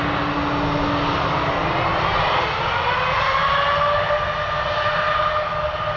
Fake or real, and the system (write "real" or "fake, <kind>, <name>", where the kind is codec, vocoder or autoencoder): real